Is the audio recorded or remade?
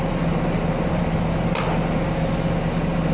recorded